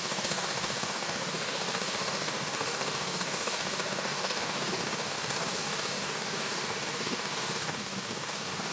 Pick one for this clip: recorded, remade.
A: remade